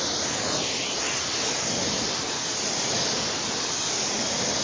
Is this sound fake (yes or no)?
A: no